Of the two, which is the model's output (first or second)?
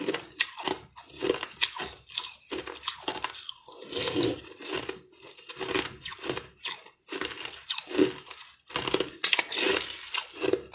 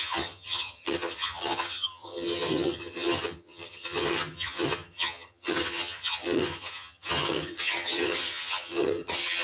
second